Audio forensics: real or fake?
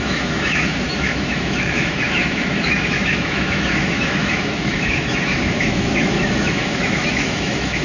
fake